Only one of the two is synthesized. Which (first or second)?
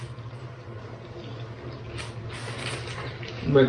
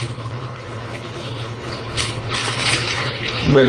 second